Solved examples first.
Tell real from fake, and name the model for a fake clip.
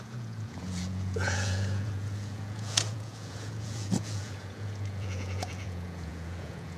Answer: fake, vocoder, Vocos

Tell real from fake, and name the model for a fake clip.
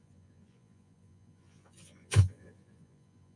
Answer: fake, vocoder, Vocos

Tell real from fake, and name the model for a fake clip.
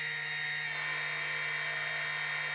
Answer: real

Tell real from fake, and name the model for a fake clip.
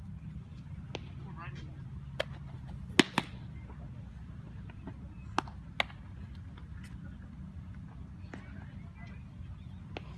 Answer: real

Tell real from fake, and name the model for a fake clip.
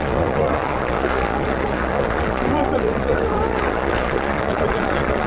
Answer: fake, vocoder, Vocos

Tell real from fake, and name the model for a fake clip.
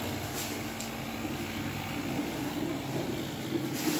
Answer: real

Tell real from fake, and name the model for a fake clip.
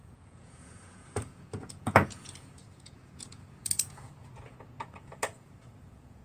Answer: fake, vocoder, Vocos